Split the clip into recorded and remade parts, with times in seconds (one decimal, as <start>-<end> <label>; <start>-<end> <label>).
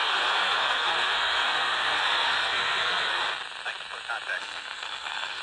0.0-3.2 remade; 3.2-4.4 recorded; 4.4-5.4 remade